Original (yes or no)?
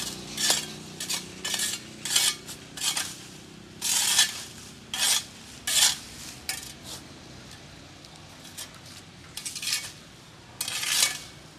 yes